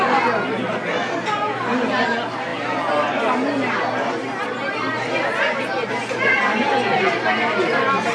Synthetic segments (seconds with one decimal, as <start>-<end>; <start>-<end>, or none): none